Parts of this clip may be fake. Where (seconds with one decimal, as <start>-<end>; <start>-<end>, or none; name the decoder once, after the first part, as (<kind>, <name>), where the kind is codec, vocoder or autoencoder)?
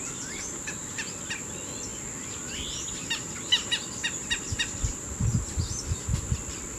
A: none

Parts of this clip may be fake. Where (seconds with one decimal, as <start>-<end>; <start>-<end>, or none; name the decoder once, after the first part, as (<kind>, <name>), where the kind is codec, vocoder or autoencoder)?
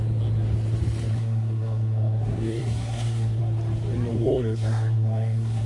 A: 1.1-3.4 (codec, SNAC); 4.1-5.7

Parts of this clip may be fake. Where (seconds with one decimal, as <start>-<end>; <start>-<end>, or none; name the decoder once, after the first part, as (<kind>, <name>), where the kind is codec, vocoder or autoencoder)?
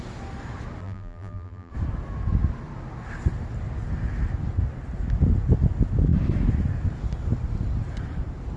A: 0.8-1.7 (vocoder, BigVGAN v2)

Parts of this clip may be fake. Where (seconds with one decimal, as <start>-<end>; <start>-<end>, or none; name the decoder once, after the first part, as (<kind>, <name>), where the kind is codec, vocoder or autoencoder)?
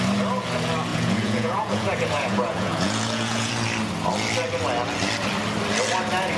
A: 0.9-3.5 (vocoder, Vocos)